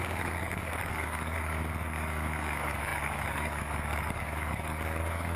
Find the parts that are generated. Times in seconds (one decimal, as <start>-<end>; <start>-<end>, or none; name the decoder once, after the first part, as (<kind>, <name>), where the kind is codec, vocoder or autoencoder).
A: 0.0-5.4 (codec, DAC)